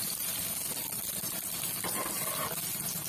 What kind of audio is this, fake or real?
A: real